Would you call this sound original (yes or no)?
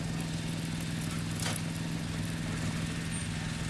yes